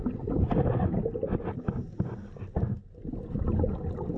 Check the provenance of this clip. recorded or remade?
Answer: recorded